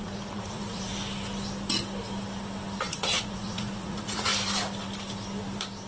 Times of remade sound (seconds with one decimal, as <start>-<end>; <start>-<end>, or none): 0.0-0.9; 2.8-4.3

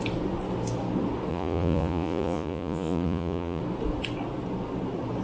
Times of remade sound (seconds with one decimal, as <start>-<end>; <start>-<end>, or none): 1.3-3.6